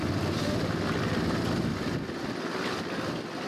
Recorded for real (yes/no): yes